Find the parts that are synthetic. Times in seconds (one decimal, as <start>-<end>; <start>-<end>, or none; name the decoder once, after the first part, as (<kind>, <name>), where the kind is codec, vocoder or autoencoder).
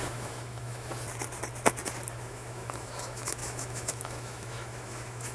0.0-0.9 (autoencoder, DAC-VAE); 2.1-5.3